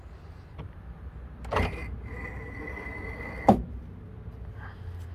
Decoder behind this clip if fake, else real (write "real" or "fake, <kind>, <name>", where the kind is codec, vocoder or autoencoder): real